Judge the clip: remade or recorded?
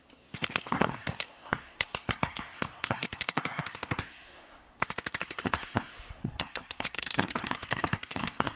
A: remade